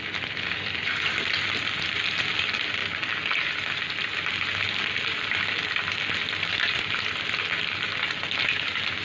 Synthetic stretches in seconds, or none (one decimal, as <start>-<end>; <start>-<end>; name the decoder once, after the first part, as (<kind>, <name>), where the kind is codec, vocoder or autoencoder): 2.8-3.4 (vocoder, BigVGAN v2)